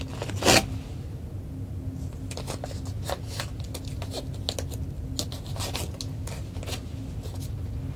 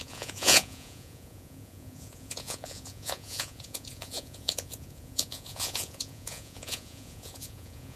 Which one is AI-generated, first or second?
second